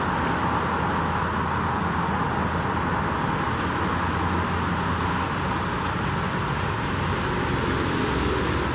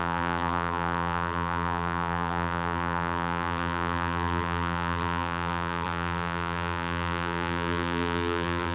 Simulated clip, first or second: second